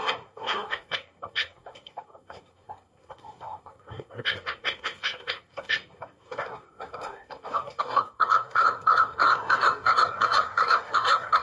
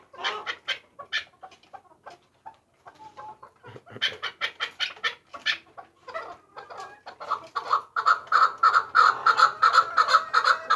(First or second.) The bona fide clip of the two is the second